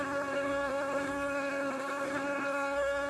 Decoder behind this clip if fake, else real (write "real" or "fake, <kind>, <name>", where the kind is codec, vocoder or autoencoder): fake, codec, SNAC